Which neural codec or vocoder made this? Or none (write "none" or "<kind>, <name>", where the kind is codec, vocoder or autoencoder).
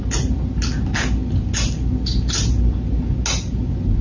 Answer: none